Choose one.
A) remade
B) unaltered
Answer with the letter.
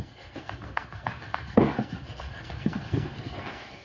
A